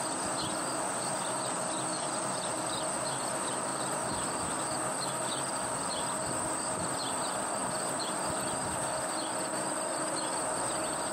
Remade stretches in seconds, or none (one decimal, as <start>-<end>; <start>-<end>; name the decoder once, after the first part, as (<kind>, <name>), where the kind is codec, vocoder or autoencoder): none